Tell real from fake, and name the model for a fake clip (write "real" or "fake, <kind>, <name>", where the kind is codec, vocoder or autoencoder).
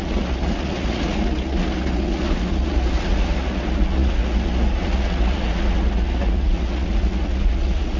fake, vocoder, Vocos